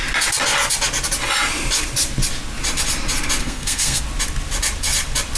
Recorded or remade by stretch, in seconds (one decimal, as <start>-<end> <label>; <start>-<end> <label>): 0.0-3.4 recorded; 3.4-4.0 remade; 4.0-5.4 recorded